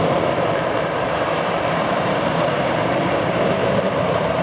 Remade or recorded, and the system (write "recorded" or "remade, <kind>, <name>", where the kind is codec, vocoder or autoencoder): remade, vocoder, BigVGAN v2